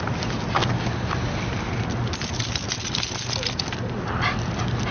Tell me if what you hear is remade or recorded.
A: recorded